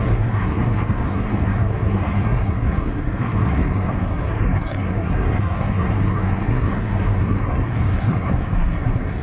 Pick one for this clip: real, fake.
fake